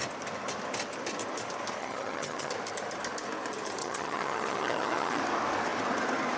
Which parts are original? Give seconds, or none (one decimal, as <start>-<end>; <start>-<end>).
0.0-1.8; 2.5-3.8; 5.2-6.4